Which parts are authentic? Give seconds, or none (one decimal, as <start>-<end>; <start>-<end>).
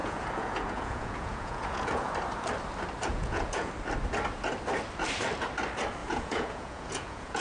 2.1-3.1; 3.7-6.0